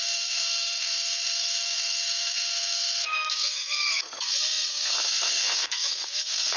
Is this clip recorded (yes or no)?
no